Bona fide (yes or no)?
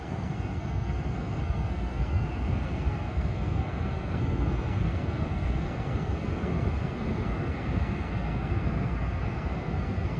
no